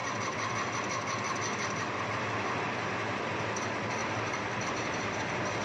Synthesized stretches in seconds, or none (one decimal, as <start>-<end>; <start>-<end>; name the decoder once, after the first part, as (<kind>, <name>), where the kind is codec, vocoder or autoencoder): 3.4-4.0 (vocoder, BigVGAN v2); 4.7-5.6